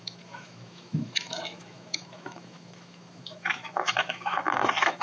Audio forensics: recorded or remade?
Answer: remade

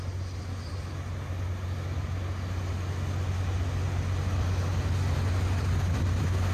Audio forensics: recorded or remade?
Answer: recorded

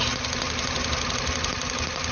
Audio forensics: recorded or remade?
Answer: recorded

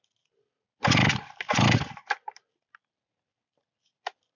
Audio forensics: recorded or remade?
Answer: recorded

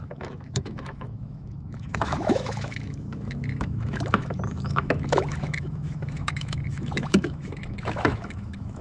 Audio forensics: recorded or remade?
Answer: remade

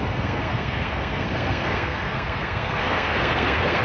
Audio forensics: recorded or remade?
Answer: remade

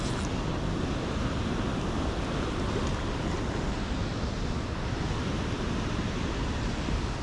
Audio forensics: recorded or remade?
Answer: recorded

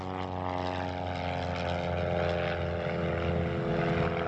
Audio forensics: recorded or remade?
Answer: recorded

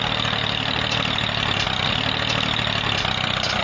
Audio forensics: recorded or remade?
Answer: remade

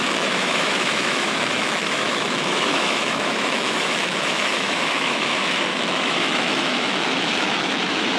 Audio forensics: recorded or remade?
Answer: remade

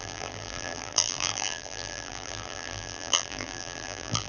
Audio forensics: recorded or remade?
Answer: remade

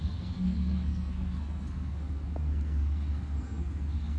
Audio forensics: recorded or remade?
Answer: remade